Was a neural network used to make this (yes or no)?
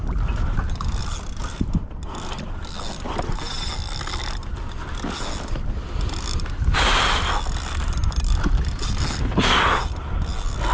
no